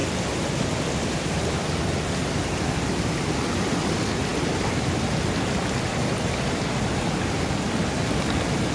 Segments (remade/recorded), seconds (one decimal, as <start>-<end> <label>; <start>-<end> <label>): 0.0-8.7 recorded